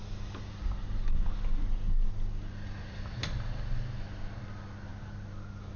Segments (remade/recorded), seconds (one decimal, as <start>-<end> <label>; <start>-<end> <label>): 0.0-5.8 recorded

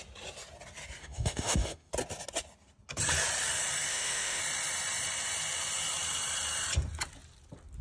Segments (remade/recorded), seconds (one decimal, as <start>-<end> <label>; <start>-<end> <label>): 0.0-1.0 recorded; 1.0-1.9 remade; 1.9-3.9 recorded; 3.9-4.4 remade; 4.4-7.8 recorded

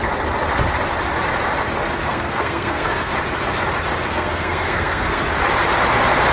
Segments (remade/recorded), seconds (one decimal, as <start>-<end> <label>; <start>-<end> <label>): 0.0-2.1 recorded; 2.1-3.1 remade; 3.1-4.1 recorded; 4.1-5.2 remade; 5.2-6.3 recorded

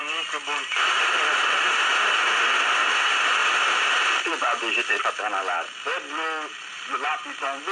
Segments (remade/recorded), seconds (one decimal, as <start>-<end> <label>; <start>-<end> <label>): 0.0-3.4 recorded; 3.4-5.0 remade; 5.0-5.9 recorded; 5.9-7.2 remade; 7.2-7.7 recorded

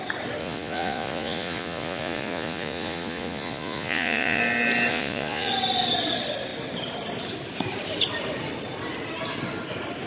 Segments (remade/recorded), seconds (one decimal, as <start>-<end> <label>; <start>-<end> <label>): 0.0-0.4 recorded; 0.4-4.4 remade; 4.4-4.9 recorded; 4.9-5.5 remade; 5.5-10.1 recorded